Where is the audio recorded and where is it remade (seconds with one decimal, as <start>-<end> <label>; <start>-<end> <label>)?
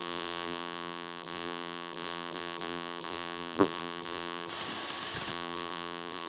0.0-4.5 remade; 4.5-5.3 recorded; 5.3-6.3 remade